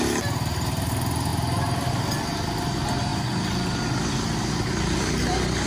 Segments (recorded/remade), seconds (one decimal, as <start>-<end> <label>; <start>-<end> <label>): 0.0-5.7 recorded